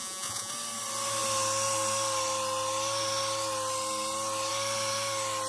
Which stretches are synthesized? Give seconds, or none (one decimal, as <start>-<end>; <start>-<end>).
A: 0.0-0.5